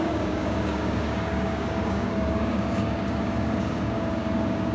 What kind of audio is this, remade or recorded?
remade